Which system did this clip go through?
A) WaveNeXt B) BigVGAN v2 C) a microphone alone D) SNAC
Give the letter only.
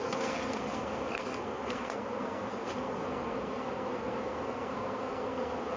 D